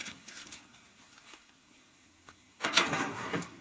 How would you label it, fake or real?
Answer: fake